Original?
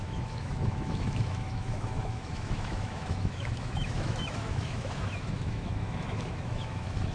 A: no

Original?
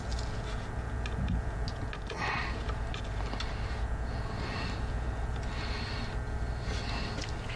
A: yes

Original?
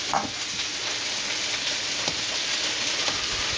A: yes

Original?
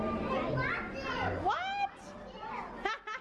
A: yes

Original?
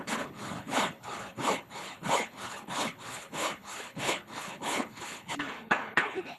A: no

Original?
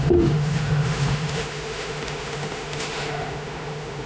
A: no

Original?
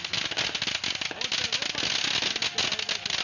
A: yes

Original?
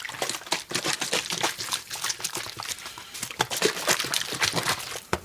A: yes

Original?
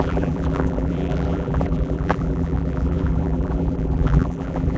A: no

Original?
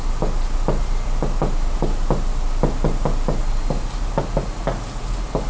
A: yes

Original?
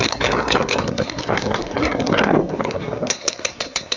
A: no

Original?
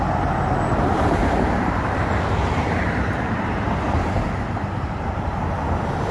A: no